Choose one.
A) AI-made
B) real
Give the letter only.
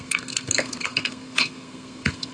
A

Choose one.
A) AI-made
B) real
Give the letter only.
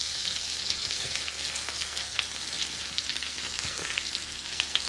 A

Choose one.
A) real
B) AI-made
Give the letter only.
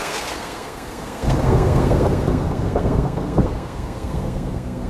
B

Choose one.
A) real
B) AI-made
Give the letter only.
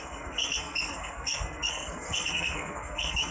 B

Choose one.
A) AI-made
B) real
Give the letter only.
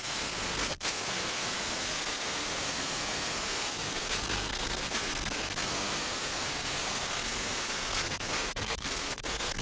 A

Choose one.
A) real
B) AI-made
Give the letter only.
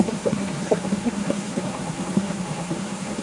B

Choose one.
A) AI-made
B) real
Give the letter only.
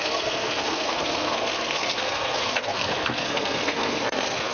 A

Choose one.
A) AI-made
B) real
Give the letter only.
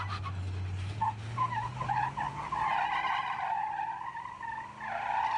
B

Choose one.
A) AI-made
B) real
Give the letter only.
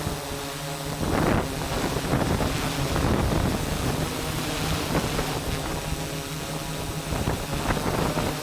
B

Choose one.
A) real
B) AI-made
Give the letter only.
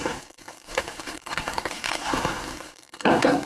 B